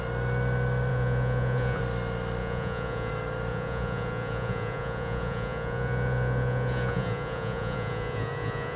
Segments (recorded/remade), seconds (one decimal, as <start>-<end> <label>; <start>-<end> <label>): 0.0-0.9 recorded; 0.9-1.8 remade; 1.8-2.4 recorded; 2.4-3.1 remade; 3.1-3.5 recorded; 3.5-8.8 remade